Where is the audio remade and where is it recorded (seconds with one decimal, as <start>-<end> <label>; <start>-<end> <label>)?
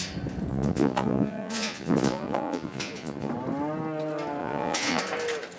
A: 0.0-0.5 recorded; 0.5-3.3 remade; 3.3-4.4 recorded; 4.4-5.0 remade; 5.0-5.6 recorded